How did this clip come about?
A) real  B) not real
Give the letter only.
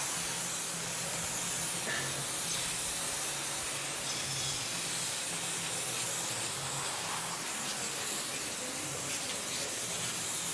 A